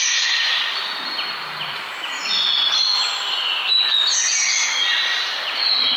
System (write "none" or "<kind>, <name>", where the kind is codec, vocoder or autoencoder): none